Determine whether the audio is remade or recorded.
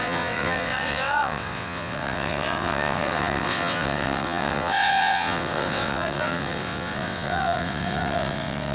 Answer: remade